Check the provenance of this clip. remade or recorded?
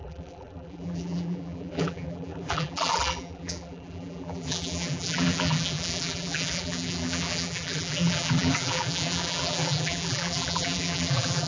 remade